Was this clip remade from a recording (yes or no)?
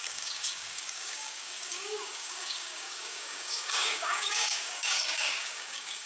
yes